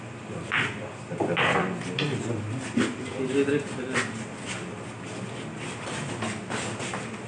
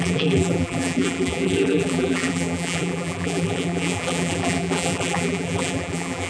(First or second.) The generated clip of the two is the second